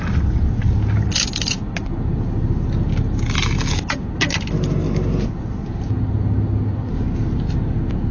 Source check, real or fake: real